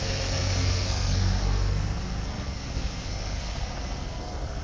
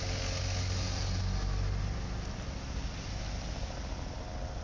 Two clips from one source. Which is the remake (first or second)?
first